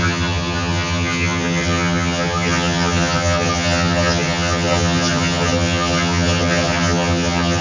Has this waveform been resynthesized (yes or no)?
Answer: yes